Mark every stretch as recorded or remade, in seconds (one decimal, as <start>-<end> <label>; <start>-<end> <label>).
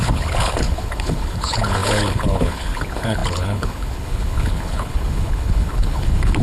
0.0-6.4 remade